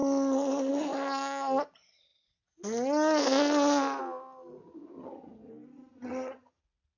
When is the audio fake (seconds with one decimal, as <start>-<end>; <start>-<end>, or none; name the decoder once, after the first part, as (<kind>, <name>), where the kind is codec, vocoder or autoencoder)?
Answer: 4.6-5.5 (vocoder, HiFi-GAN); 5.9-6.6

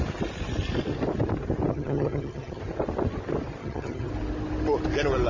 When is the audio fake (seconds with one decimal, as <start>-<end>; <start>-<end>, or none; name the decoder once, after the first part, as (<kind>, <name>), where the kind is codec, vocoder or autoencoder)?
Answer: 1.7-2.6 (vocoder, HiFi-GAN); 3.6-4.1

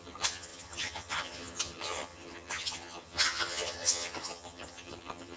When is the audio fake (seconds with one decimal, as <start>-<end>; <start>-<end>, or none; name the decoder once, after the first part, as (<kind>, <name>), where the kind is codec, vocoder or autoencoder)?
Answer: 0.0-5.4 (vocoder, HiFi-GAN)

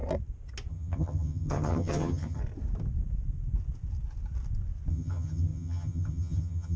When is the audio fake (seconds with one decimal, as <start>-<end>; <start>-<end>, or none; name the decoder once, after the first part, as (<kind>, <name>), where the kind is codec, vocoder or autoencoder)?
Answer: 0.7-2.4 (vocoder, HiFi-GAN); 4.9-6.8

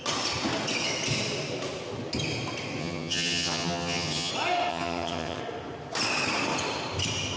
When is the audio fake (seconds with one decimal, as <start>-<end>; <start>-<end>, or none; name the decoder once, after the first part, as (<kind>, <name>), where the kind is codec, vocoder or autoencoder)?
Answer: 2.8-4.3 (vocoder, HiFi-GAN); 4.7-5.4

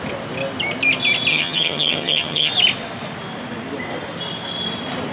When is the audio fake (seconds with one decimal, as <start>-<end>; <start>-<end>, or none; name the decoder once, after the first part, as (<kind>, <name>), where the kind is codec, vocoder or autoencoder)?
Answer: 1.3-2.5 (vocoder, HiFi-GAN)

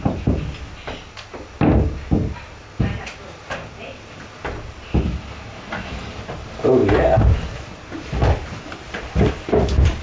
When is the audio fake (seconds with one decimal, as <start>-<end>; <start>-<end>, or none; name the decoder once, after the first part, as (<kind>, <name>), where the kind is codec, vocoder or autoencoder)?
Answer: none

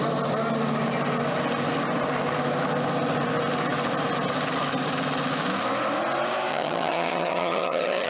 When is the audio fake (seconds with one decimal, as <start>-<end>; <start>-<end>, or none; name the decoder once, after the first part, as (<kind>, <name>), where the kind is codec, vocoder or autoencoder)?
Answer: 6.5-8.1 (vocoder, HiFi-GAN)